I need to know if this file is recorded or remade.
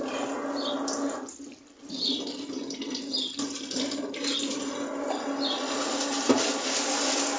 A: recorded